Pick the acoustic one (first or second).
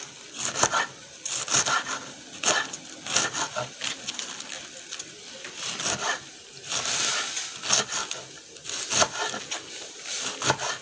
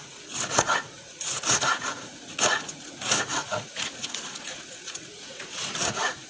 first